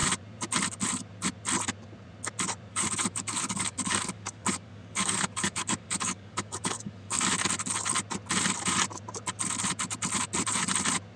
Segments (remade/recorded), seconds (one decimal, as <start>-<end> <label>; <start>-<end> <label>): 0.0-2.7 recorded; 2.7-7.3 remade; 7.3-11.2 recorded